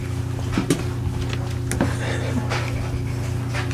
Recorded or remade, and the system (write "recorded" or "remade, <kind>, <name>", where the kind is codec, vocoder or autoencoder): recorded